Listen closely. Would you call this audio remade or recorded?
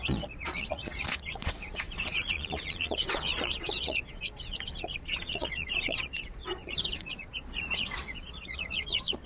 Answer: remade